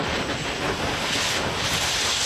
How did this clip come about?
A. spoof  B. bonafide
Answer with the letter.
B